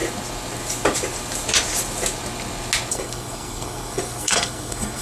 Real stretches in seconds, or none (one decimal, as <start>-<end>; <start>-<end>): 0.0-2.9